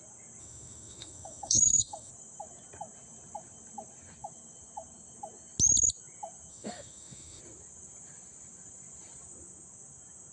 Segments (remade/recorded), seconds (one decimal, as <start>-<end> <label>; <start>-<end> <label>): 0.0-0.4 recorded; 0.4-2.1 remade; 2.1-6.5 recorded; 6.5-7.4 remade; 7.4-10.3 recorded